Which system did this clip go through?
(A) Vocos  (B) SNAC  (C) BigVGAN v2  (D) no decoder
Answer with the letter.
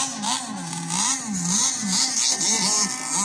D